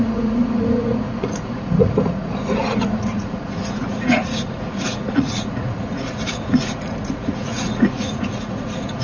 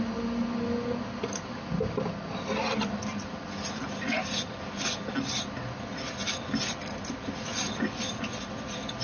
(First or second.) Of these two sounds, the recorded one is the second